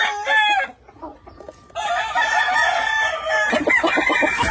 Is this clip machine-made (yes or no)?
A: no